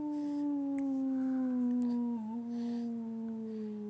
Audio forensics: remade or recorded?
recorded